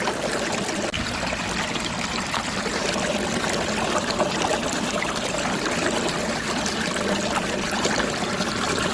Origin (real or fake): real